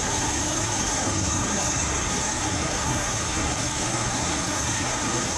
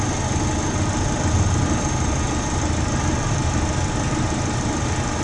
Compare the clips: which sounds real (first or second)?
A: second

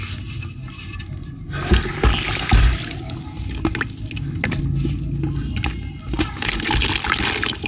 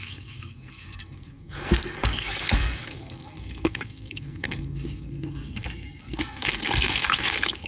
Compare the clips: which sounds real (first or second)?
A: first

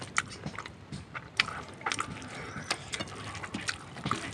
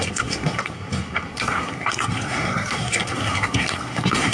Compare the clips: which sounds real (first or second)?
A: first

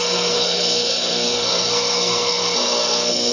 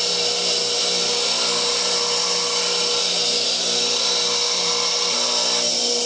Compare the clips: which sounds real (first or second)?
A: second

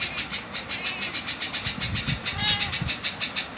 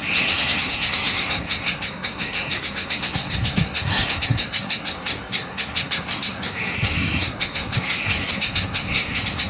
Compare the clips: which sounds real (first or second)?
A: first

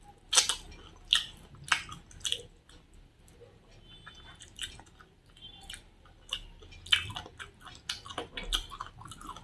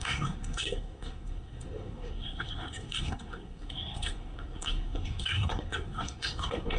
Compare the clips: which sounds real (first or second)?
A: first